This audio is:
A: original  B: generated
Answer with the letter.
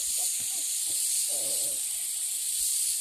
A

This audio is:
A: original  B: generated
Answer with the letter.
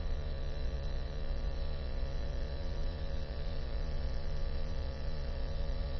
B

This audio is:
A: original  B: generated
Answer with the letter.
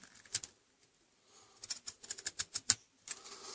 A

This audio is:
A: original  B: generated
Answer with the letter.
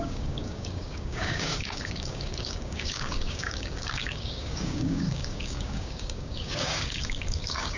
B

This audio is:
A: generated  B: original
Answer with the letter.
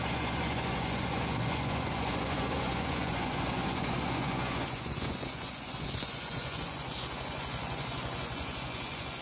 A